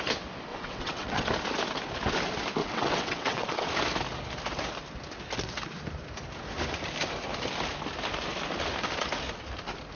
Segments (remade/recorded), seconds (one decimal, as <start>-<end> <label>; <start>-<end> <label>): 0.0-0.5 recorded; 0.5-1.3 remade; 1.3-2.6 recorded; 2.6-3.7 remade; 3.7-9.9 recorded